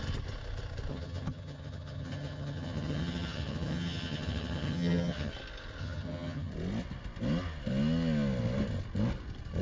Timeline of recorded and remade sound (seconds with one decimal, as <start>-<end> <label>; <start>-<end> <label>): 0.0-0.9 recorded; 0.9-5.3 remade; 5.3-5.8 recorded; 5.8-6.5 remade; 6.5-9.6 recorded